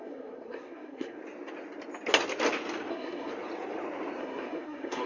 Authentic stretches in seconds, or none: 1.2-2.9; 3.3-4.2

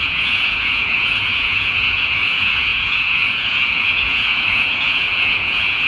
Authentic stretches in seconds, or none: none

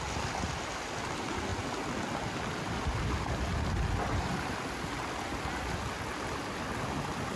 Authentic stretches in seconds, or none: 0.0-7.4

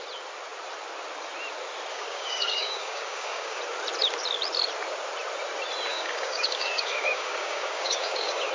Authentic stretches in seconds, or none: 0.0-1.9; 3.6-5.9

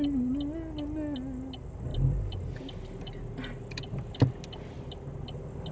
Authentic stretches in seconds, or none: 0.0-5.7

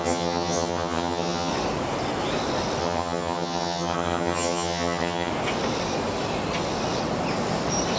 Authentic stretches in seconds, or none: 1.5-2.8; 5.3-8.0

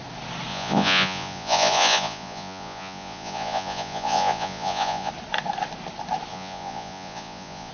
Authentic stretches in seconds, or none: 0.0-0.5; 5.1-6.3

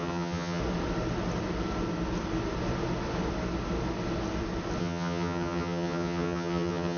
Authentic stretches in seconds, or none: 0.6-4.8